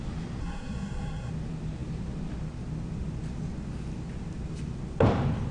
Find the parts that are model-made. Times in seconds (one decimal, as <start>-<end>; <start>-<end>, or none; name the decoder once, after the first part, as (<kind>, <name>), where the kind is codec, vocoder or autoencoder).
0.4-1.3 (codec, SNAC)